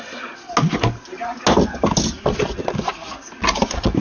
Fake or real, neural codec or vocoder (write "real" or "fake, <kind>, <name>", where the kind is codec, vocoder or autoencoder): real